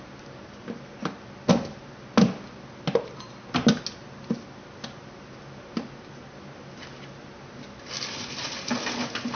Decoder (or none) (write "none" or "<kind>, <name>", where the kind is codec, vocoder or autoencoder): none